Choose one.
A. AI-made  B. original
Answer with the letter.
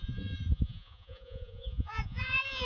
A